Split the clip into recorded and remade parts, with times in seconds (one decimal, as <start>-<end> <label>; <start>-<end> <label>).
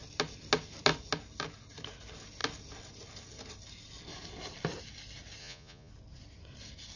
0.0-5.4 recorded; 5.4-5.9 remade; 5.9-7.0 recorded